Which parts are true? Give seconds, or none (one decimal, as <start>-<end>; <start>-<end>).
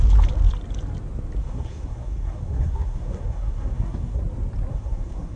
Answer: 0.0-1.4; 4.2-4.7